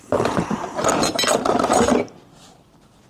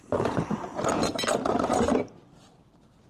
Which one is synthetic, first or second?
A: second